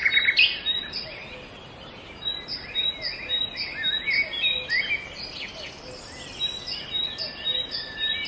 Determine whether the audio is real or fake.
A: real